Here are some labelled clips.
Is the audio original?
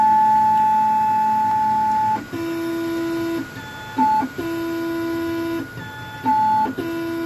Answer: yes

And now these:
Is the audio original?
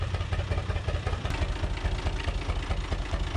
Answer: yes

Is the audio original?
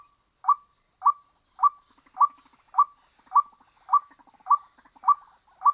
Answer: yes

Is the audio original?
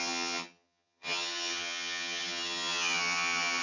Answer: no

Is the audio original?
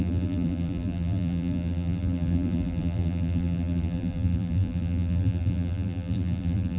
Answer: no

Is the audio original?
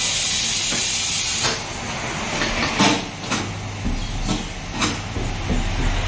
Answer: yes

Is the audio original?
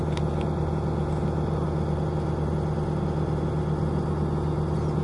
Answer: yes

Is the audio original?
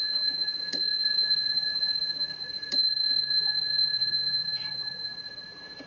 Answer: no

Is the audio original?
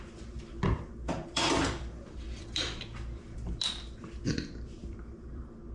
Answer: no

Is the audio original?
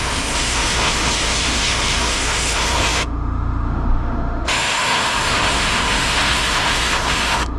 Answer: no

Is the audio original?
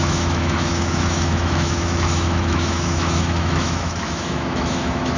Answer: no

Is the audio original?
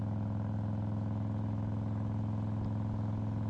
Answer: yes